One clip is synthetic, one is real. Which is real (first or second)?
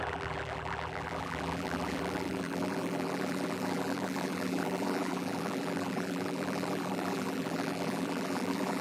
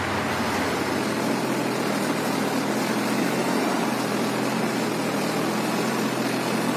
second